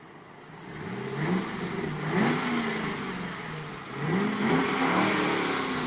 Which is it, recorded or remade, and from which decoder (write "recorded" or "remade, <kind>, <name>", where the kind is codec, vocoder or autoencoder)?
recorded